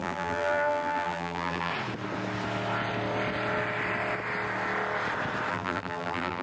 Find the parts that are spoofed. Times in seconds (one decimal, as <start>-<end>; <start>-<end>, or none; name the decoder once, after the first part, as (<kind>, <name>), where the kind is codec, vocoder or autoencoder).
0.0-1.7 (vocoder, BigVGAN v2); 5.5-6.4